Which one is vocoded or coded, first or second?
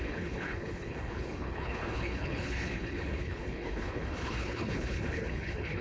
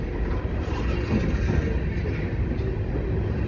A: first